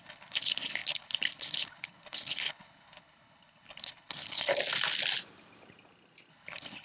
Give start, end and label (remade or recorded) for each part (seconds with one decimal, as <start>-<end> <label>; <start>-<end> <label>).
0.0-4.5 remade; 4.5-6.3 recorded; 6.3-6.8 remade